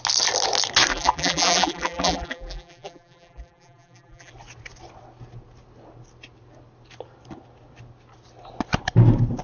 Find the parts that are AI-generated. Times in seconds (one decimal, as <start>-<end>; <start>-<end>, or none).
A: 0.9-4.3